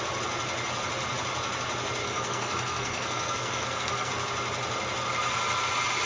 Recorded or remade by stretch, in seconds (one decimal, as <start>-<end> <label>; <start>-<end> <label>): 0.0-2.0 recorded; 2.0-4.1 remade; 4.1-6.1 recorded